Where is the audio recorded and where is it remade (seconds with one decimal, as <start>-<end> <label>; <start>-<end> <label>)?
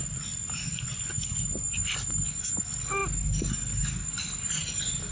0.0-5.1 recorded